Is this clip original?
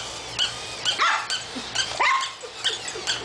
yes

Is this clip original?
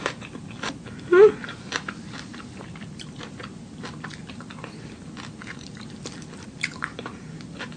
yes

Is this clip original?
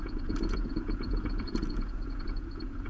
no